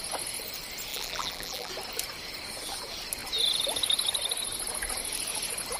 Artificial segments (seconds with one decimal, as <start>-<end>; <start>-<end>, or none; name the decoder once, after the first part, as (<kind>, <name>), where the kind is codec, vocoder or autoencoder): 0.9-1.7 (vocoder, BigVGAN v2)